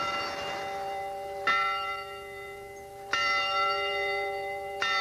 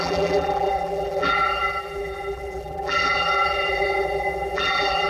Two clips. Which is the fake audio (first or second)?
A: second